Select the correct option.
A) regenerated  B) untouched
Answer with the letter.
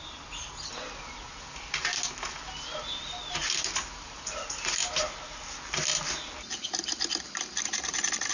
B